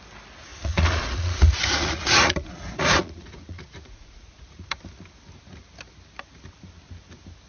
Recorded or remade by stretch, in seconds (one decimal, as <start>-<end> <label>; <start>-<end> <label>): 0.0-0.5 recorded; 0.5-4.8 remade; 4.8-7.5 recorded